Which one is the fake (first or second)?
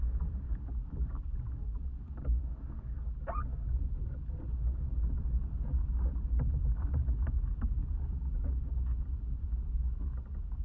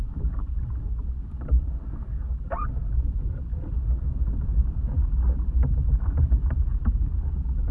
second